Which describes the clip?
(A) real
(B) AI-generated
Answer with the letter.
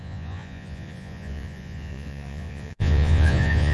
B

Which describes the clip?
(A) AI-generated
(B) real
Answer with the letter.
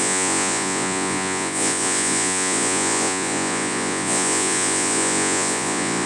A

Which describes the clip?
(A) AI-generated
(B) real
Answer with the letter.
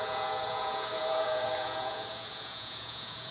A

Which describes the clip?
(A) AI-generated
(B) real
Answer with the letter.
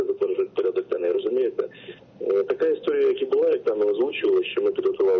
B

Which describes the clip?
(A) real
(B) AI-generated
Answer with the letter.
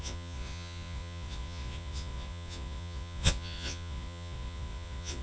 B